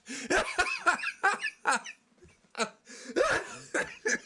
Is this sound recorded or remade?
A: remade